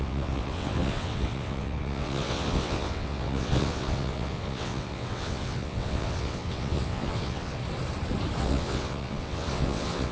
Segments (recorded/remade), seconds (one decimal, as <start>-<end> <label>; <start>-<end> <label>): 0.0-7.6 remade; 7.6-8.4 recorded; 8.4-10.1 remade